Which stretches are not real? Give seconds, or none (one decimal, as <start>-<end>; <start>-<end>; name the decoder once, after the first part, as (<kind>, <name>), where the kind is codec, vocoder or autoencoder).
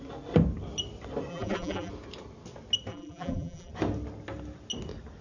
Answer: 1.3-1.9 (vocoder, BigVGAN v2); 2.9-3.7